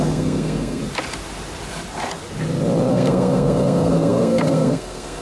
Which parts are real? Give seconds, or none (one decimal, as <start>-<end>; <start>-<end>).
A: 0.8-2.9